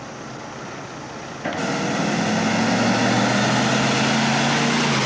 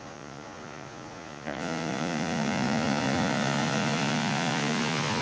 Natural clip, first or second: first